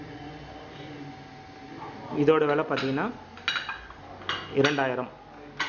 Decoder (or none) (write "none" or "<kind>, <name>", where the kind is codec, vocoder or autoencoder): none